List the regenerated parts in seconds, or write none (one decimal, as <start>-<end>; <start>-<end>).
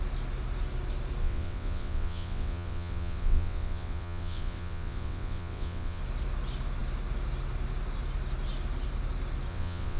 1.2-6.0; 9.5-10.0